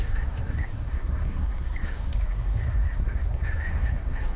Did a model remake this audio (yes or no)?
yes